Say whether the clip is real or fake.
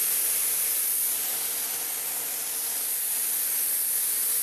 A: real